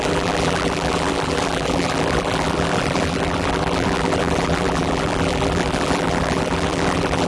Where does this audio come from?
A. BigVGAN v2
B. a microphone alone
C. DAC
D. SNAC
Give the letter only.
A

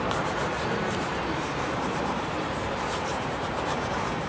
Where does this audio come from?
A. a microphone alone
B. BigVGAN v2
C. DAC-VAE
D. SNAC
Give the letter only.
B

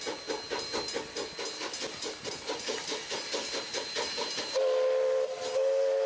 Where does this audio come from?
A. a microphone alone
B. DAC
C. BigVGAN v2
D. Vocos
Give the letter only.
A